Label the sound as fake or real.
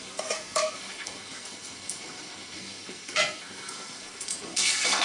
fake